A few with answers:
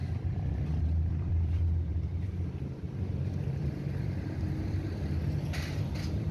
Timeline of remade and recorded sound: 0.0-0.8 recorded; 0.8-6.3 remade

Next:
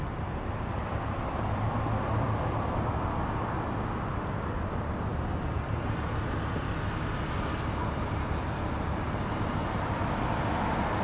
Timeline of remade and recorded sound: 0.0-11.0 recorded

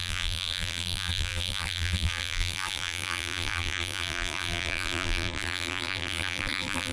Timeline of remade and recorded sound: 0.0-6.9 remade

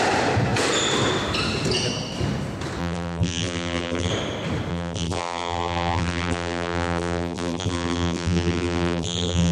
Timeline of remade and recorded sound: 0.0-2.8 recorded; 2.8-4.1 remade; 4.1-4.7 recorded; 4.7-9.5 remade